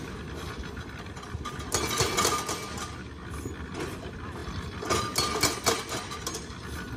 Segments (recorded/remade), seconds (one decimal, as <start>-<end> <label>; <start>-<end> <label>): 0.0-7.0 recorded

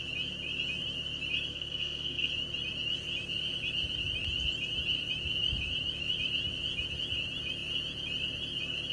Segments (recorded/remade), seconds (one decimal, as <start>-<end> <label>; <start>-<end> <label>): 0.0-1.5 recorded; 1.5-2.3 remade; 2.3-8.9 recorded

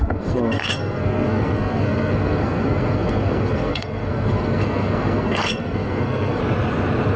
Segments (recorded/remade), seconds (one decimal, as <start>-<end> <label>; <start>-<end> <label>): 0.0-6.4 remade; 6.4-7.2 recorded

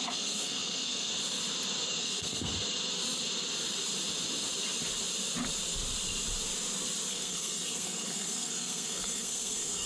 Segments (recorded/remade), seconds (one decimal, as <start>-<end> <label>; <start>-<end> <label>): 0.0-1.1 remade; 1.1-2.0 recorded; 2.0-2.5 remade; 2.5-7.1 recorded; 7.1-9.9 remade

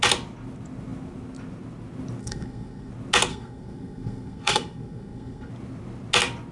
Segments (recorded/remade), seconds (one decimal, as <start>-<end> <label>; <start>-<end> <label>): 0.0-2.2 recorded; 2.2-2.9 remade; 2.9-3.3 recorded; 3.3-5.5 remade; 5.5-6.5 recorded

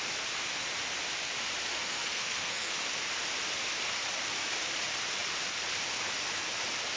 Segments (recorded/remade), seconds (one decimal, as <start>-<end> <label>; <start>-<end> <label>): 0.0-1.7 recorded; 1.7-2.7 remade; 2.7-7.0 recorded